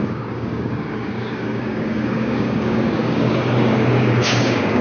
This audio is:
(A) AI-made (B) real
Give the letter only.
A